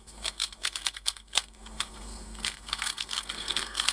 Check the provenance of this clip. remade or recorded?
remade